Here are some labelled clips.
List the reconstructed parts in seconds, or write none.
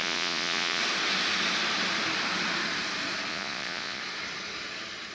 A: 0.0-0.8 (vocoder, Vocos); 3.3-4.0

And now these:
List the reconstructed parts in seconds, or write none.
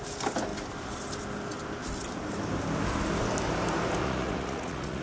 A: 4.0-5.0 (vocoder, Vocos)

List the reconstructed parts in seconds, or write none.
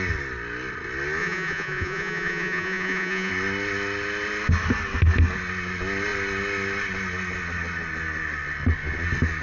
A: 1.2-3.3 (vocoder, Vocos)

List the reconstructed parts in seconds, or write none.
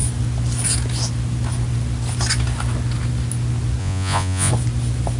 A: 3.8-4.5 (vocoder, Vocos)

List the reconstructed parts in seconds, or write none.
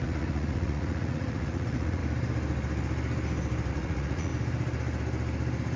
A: 0.0-2.0 (vocoder, Vocos); 3.7-4.3